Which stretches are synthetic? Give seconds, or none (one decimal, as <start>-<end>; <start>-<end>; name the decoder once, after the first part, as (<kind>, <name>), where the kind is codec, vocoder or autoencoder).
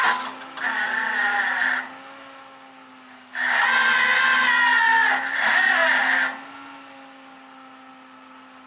none